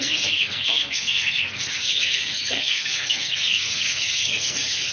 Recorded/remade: remade